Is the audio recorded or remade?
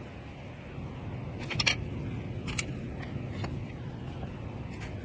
recorded